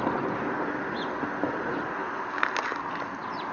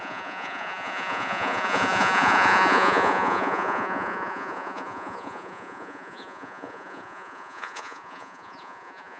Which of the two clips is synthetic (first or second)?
second